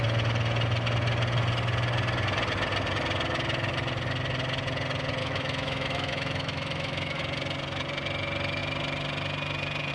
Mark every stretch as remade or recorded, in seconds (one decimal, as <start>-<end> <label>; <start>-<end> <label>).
0.0-5.2 recorded; 5.2-7.2 remade; 7.2-9.9 recorded